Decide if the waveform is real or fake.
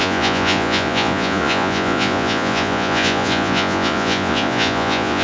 fake